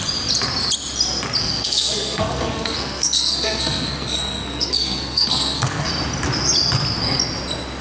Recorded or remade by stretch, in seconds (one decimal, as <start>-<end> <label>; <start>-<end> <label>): 0.0-1.4 recorded; 1.4-5.9 remade; 5.9-7.8 recorded